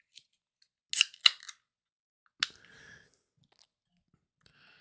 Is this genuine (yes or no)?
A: yes